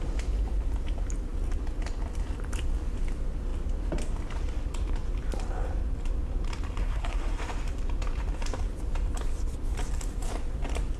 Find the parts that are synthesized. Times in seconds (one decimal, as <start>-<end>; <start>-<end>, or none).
6.8-7.4